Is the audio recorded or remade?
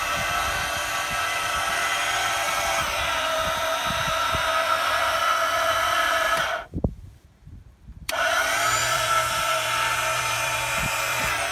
remade